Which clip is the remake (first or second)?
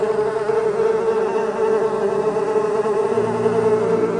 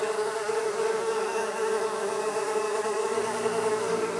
second